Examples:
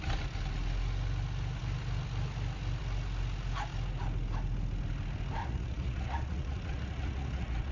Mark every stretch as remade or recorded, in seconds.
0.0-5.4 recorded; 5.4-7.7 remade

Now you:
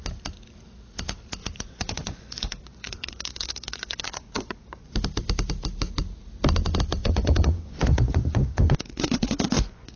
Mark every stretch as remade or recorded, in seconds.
0.0-1.4 recorded; 1.4-4.9 remade; 4.9-7.0 recorded; 7.0-10.0 remade

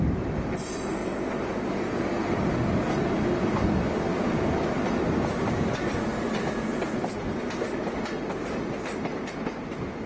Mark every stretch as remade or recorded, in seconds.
0.0-10.1 recorded